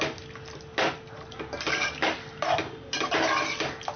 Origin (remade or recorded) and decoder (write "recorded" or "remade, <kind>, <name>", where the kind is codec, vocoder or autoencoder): recorded